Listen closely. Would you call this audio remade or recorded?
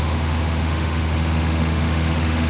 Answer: remade